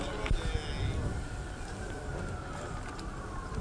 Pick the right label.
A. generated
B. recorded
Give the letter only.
B